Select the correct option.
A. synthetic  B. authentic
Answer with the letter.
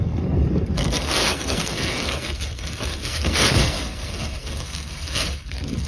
A